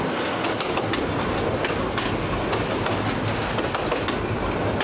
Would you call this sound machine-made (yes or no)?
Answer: no